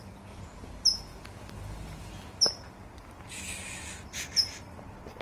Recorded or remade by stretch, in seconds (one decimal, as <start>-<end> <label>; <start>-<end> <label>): 0.0-5.2 recorded